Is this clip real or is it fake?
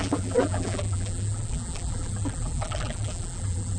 fake